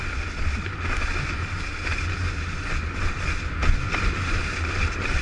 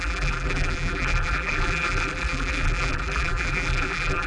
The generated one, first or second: second